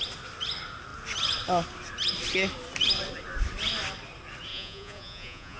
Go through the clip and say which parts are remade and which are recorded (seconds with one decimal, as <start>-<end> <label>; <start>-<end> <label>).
0.0-4.5 recorded; 4.5-5.6 remade

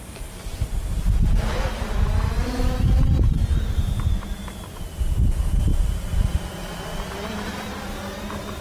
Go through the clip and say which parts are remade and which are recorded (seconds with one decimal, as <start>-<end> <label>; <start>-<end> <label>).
0.0-8.6 recorded

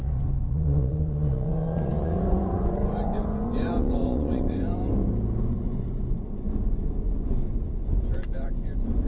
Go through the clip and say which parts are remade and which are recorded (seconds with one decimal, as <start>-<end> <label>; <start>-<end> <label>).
0.0-4.8 remade; 4.8-5.4 recorded; 5.4-9.1 remade